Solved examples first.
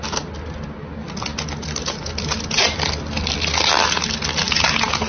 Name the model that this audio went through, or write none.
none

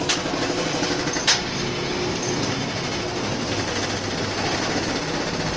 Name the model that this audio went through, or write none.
none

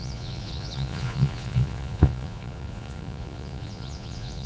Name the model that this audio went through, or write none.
vocoder, Vocos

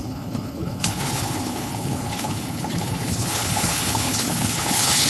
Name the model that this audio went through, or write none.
codec, HILCodec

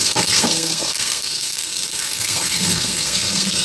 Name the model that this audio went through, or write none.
codec, SNAC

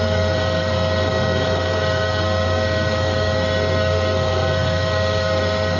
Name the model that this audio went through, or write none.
codec, SNAC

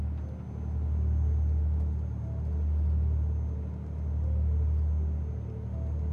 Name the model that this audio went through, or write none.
none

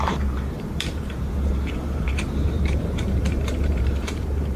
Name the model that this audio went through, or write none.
vocoder, BigVGAN v2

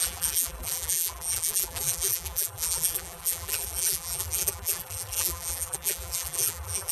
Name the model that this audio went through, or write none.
vocoder, BigVGAN v2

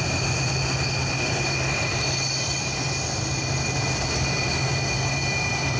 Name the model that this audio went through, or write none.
none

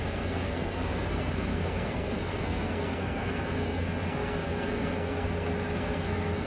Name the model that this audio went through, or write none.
codec, SNAC